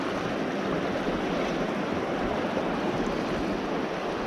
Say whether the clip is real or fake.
real